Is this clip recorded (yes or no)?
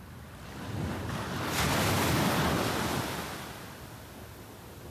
yes